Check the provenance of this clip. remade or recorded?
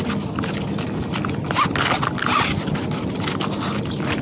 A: recorded